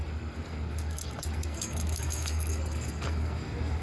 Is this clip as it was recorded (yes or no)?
no